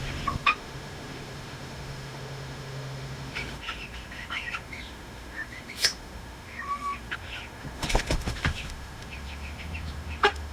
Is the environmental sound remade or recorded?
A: remade